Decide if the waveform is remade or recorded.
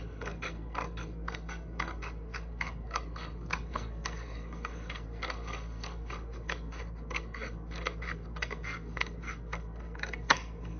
remade